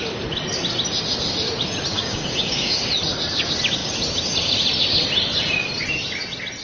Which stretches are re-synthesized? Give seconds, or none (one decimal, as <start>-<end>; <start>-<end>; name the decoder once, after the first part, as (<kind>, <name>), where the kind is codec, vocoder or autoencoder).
1.9-2.7 (codec, DAC)